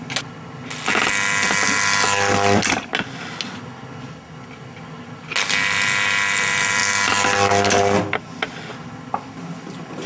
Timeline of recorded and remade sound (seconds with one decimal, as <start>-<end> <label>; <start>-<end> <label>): 0.0-10.1 recorded